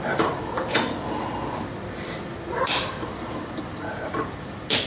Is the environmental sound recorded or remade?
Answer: recorded